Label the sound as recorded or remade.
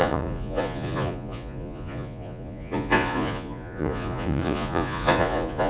remade